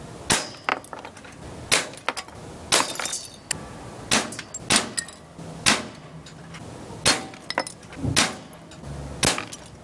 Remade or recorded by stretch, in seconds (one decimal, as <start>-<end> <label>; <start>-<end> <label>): 0.0-9.8 recorded